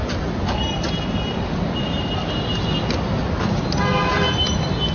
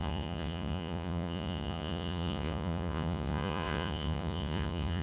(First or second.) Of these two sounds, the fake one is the second